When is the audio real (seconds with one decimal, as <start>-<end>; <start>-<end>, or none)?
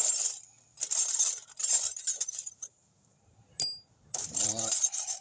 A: 0.0-1.6; 3.3-4.2